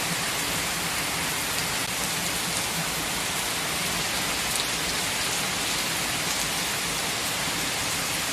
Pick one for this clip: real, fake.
real